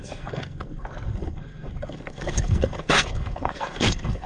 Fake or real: fake